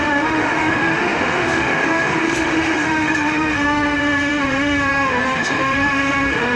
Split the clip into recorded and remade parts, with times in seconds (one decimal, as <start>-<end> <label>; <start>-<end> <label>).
0.0-6.6 remade